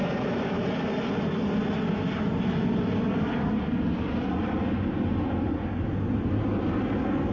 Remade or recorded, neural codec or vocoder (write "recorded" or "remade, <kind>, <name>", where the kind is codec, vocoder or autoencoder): recorded